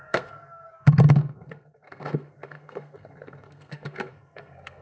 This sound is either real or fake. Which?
fake